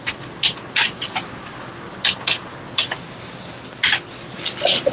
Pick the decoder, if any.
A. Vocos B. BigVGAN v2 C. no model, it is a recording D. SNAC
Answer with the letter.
C